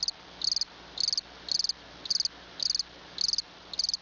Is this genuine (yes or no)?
yes